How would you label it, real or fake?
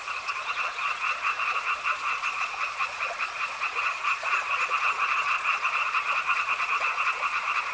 fake